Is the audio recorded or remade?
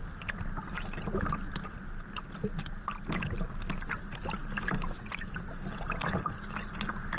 recorded